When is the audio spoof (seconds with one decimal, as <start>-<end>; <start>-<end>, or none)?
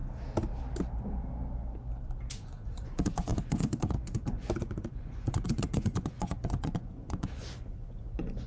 2.3-8.5